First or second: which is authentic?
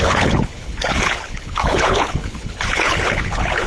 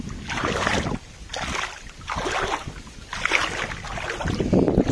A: second